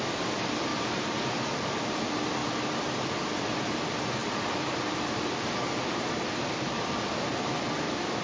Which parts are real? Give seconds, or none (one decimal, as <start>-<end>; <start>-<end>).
0.0-0.7; 2.0-2.4; 3.8-4.2; 7.7-8.2